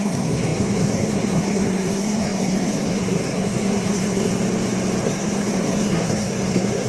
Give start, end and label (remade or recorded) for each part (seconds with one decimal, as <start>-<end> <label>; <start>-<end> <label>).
0.0-4.3 remade; 4.3-5.0 recorded; 5.0-6.9 remade